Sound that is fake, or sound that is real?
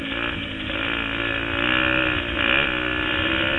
real